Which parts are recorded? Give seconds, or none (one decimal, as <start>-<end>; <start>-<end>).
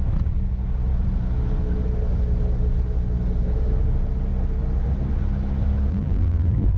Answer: 0.0-5.9